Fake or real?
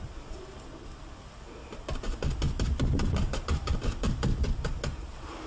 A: fake